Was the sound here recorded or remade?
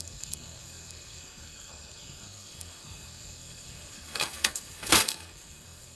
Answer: remade